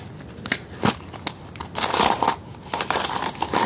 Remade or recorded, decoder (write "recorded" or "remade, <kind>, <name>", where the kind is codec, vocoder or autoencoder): recorded